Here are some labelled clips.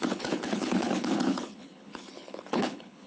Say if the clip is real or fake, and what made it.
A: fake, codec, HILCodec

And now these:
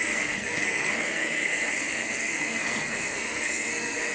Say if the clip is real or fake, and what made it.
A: fake, codec, SNAC